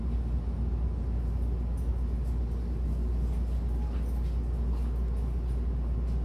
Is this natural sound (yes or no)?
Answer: yes